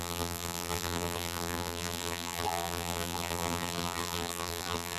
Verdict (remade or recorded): remade